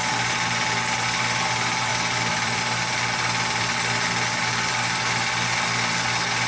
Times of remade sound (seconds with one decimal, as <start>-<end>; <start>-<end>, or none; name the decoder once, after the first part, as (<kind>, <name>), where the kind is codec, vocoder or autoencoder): 1.9-2.6 (vocoder, BigVGAN v2)